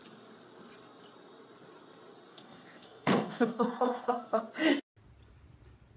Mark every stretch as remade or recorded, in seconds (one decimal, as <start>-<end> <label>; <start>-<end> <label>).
0.0-2.3 recorded; 2.3-4.4 remade; 4.4-6.0 recorded